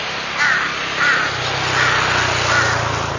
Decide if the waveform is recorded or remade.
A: recorded